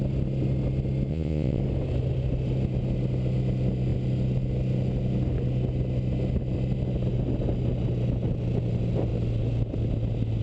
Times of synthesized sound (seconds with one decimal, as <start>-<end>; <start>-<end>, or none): 1.1-1.6